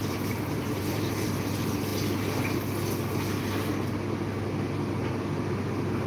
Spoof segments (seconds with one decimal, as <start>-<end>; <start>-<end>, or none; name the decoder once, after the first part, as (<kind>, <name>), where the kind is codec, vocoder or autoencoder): 0.0-1.1 (vocoder, BigVGAN v2)